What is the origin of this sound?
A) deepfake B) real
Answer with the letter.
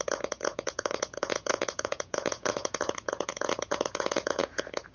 A